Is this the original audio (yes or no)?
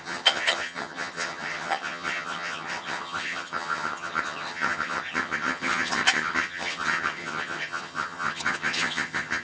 no